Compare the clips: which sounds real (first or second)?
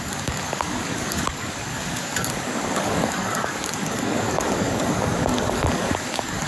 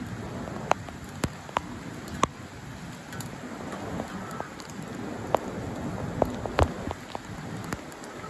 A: second